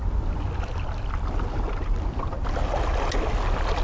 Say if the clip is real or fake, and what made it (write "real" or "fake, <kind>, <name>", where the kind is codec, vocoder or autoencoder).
real